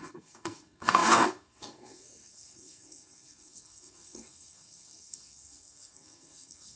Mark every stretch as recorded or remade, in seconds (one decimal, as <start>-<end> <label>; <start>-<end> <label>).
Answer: 0.0-6.8 remade